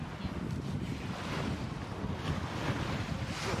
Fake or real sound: real